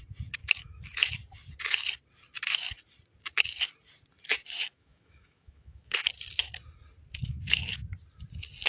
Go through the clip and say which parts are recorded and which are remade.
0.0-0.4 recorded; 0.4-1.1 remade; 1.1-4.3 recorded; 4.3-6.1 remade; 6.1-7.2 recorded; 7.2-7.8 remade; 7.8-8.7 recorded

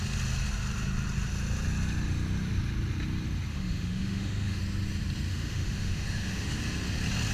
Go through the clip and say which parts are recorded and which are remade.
0.0-3.5 recorded; 3.5-4.6 remade; 4.6-5.3 recorded; 5.3-6.6 remade; 6.6-7.3 recorded